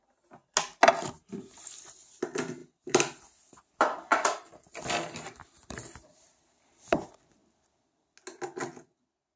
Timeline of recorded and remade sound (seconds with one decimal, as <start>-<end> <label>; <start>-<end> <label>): 0.0-0.4 remade; 0.4-1.1 recorded; 1.1-7.4 remade; 7.4-9.4 recorded